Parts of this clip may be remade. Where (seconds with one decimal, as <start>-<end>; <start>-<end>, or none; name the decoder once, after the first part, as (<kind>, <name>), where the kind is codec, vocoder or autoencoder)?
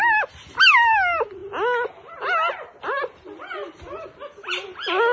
none